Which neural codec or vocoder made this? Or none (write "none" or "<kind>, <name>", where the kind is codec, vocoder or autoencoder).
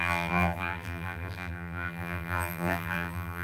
vocoder, BigVGAN v2